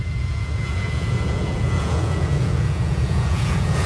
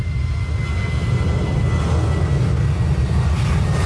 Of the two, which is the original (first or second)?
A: second